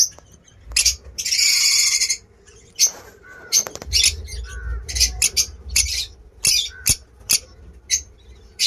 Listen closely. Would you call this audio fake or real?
real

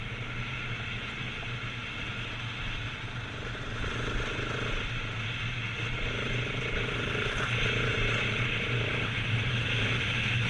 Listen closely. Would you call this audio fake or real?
real